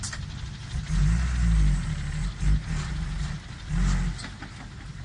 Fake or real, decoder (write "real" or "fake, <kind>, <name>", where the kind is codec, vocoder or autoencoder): real